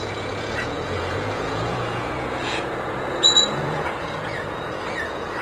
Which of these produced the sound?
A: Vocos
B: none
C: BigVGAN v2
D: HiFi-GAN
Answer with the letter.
A